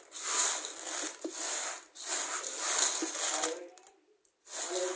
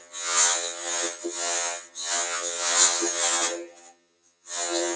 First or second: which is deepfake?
second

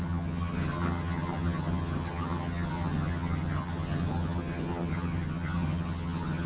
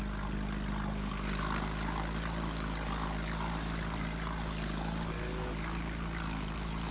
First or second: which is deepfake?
first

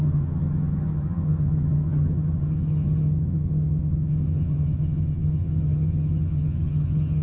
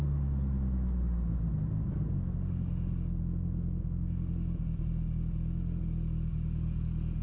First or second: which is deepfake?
first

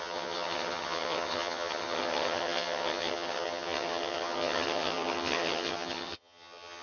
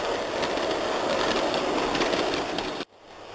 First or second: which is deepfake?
first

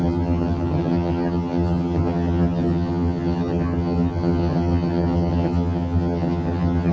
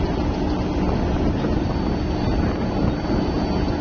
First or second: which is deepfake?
first